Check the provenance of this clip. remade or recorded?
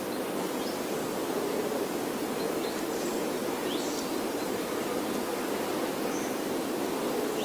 recorded